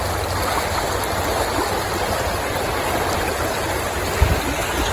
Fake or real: real